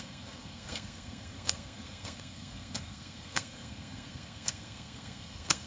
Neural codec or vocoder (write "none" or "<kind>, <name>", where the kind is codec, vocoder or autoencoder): codec, SNAC